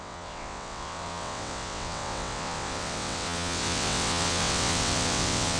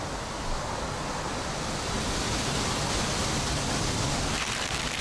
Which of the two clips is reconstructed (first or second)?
first